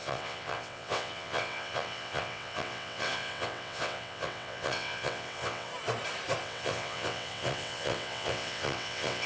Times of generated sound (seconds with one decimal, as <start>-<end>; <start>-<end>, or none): 0.0-5.7; 6.4-9.3